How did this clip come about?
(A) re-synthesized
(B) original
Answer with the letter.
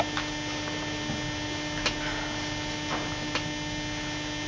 B